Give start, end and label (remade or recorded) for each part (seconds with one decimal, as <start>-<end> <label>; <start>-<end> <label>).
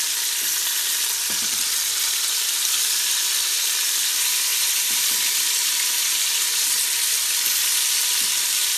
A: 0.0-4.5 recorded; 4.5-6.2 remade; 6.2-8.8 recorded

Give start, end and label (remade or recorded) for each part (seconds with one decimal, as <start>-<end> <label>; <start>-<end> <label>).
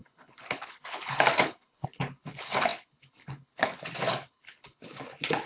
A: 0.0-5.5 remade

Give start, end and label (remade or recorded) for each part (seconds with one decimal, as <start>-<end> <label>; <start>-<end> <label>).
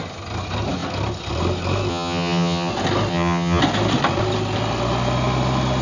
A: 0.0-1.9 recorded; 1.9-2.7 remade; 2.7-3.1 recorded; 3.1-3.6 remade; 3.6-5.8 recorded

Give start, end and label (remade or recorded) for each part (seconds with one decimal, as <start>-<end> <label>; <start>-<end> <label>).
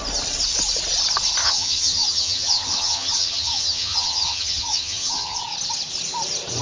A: 0.0-1.4 recorded; 1.4-5.4 remade; 5.4-6.6 recorded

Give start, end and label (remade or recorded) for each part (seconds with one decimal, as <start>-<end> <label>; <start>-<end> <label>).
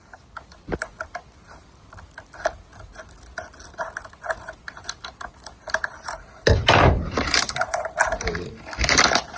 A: 0.0-5.9 recorded; 5.9-8.0 remade; 8.0-9.4 recorded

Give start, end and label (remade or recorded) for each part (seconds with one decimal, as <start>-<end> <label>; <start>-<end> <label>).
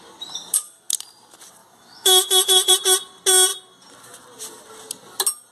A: 0.0-1.6 recorded; 1.6-2.7 remade; 2.7-5.5 recorded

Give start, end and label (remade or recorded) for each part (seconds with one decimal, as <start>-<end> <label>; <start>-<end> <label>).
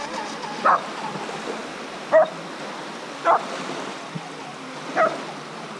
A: 0.0-5.8 recorded